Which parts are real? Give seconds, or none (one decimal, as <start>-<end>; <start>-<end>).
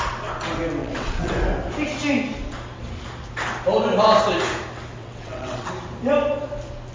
0.0-0.8; 1.3-5.0; 5.7-6.9